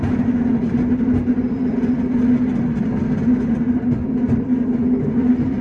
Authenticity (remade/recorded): recorded